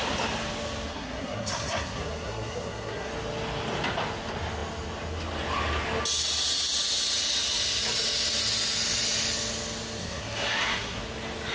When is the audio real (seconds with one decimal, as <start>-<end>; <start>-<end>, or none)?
0.0-0.9; 3.1-10.0; 11.0-11.5